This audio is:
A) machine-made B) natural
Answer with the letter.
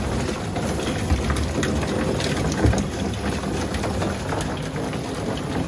B